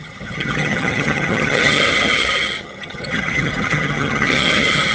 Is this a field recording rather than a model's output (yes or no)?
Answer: no